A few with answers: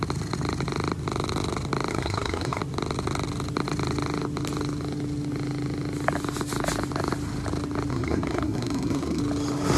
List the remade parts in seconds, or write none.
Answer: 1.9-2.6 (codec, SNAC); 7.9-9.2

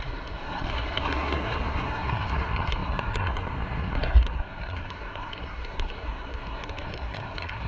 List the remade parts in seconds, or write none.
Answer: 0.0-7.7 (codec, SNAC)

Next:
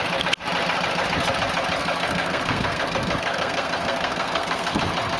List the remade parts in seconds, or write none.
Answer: 1.8-4.8 (codec, SNAC)

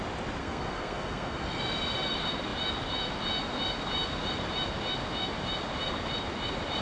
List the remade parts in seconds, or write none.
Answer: 0.4-1.6 (codec, SNAC)

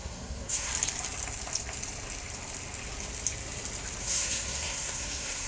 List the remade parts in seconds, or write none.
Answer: 0.0-0.7 (codec, SNAC); 4.0-5.5

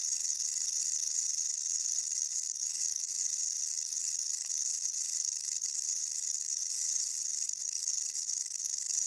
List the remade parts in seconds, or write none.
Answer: none

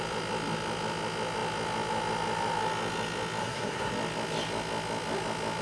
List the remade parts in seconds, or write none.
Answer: 3.4-3.9 (codec, SNAC)